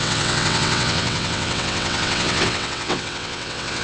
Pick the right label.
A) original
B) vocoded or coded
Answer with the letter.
B